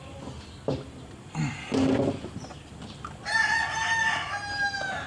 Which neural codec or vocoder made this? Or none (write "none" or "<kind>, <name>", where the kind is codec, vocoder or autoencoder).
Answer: none